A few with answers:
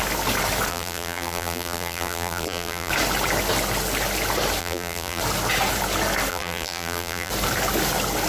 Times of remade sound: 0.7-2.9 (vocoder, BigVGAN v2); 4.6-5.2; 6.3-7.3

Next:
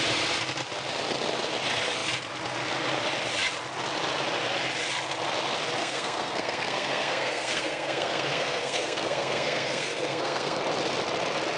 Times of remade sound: 5.8-10.6 (codec, SNAC)

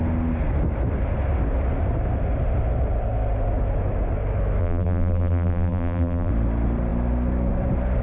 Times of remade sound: 4.6-6.3 (vocoder, BigVGAN v2)